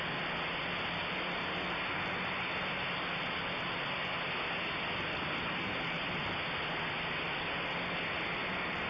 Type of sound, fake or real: real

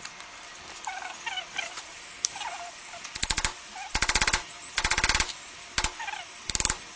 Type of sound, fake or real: real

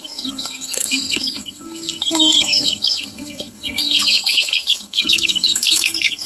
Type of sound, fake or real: fake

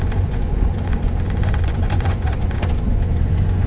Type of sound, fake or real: fake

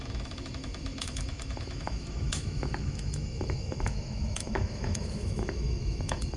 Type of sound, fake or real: fake